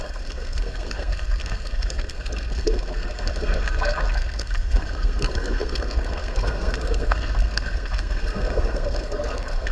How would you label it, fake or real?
fake